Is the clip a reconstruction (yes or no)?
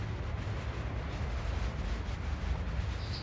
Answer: no